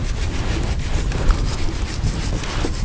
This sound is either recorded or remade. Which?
recorded